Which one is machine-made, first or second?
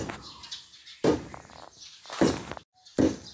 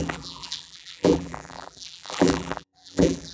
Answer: second